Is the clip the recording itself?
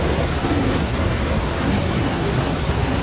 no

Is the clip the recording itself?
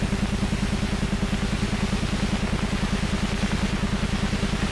yes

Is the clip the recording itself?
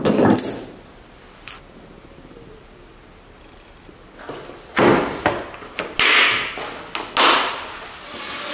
yes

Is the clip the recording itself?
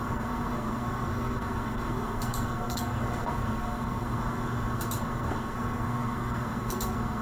no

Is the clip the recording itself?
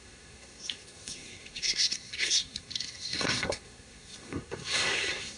no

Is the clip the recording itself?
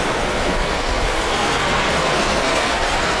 no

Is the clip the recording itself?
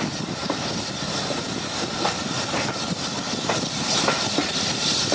yes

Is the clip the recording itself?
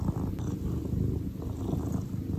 yes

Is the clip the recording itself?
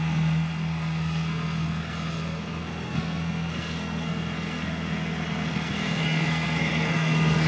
no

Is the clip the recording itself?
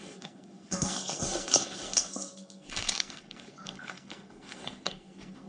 no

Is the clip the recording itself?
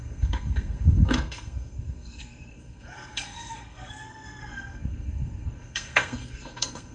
no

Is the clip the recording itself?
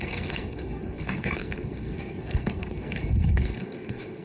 no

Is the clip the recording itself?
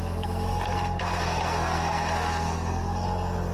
no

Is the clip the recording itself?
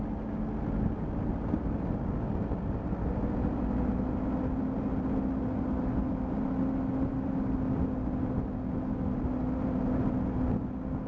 yes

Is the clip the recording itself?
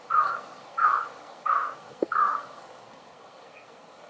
no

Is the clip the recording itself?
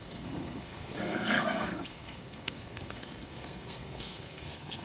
no